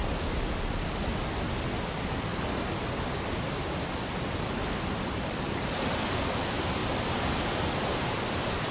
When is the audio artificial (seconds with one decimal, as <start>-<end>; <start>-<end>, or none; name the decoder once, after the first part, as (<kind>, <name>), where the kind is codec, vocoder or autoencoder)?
1.9-2.3 (vocoder, BigVGAN v2); 5.0-8.7